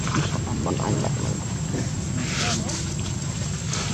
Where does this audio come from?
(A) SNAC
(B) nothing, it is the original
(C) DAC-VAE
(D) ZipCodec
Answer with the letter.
B